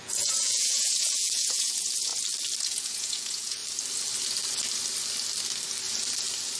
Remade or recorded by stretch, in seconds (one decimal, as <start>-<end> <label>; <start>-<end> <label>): 0.0-2.1 remade; 2.1-2.6 recorded; 2.6-3.6 remade; 3.6-6.6 recorded